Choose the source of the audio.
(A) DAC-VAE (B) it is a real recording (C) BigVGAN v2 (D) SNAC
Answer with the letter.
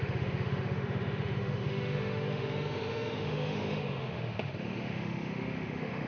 A